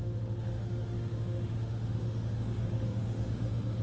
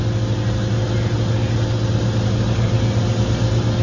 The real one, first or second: second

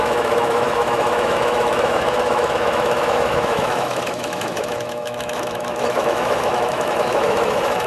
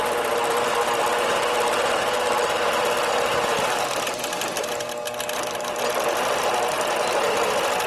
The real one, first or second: second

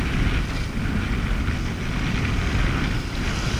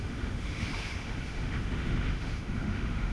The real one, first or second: first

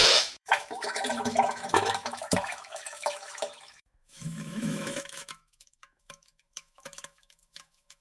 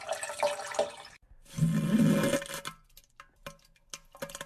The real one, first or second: second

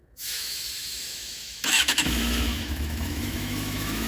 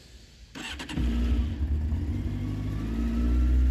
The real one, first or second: second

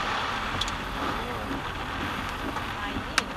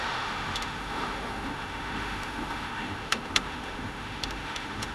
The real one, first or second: first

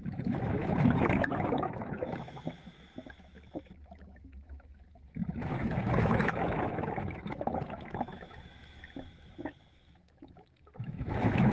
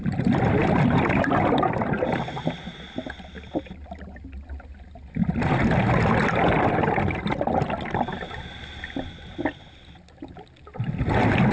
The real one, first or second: second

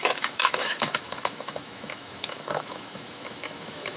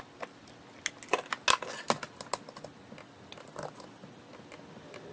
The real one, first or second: second